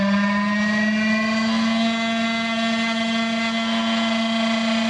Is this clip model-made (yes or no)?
no